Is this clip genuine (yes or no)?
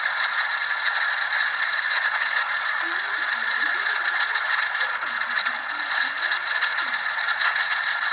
no